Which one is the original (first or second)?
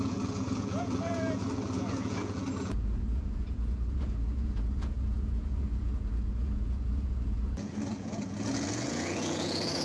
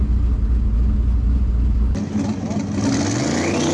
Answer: second